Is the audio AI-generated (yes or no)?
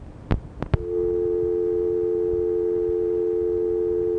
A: no